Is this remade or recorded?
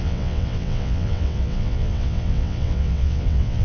remade